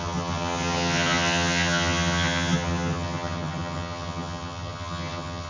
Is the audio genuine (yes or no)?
no